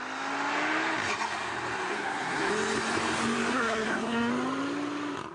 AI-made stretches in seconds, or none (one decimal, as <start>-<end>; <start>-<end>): 1.9-2.5; 3.5-4.3